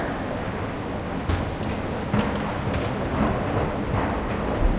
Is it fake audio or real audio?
real